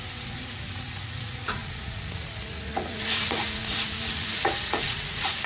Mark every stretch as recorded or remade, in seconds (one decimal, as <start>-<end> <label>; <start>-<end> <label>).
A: 0.0-5.5 remade